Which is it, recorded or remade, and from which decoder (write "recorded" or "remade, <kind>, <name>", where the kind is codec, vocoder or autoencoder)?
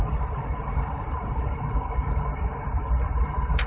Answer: remade, vocoder, BigVGAN v2